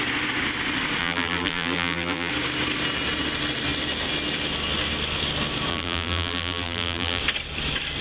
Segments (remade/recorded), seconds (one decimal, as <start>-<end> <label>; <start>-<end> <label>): 0.0-1.0 recorded; 1.0-2.3 remade; 2.3-5.7 recorded; 5.7-7.2 remade; 7.2-8.0 recorded